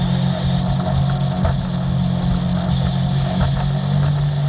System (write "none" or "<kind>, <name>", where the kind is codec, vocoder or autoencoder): none